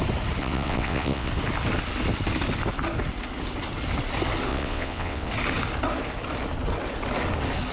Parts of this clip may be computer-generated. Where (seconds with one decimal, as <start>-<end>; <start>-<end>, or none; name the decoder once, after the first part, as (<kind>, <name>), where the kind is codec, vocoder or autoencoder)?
0.4-1.3 (vocoder, WaveNeXt); 4.5-5.3